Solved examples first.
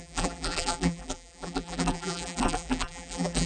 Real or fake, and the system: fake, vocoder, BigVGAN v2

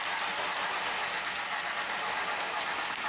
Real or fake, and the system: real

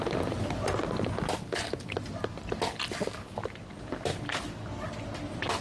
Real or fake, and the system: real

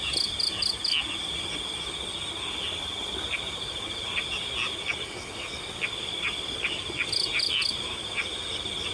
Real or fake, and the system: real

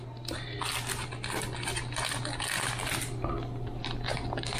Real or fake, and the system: real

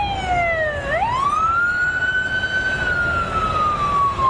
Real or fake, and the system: real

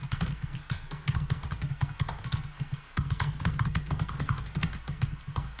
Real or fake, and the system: fake, codec, SNAC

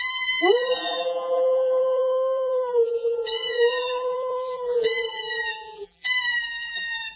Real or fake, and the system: fake, vocoder, BigVGAN v2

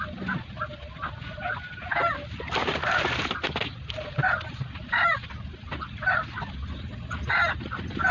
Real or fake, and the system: real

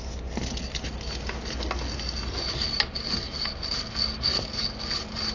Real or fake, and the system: real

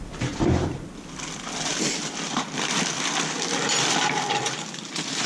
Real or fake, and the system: fake, vocoder, BigVGAN v2